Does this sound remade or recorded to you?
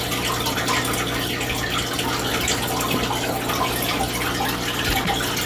recorded